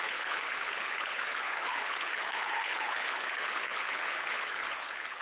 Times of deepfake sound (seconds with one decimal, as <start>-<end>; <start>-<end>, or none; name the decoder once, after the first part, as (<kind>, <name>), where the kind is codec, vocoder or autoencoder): 0.0-5.2 (codec, HILCodec)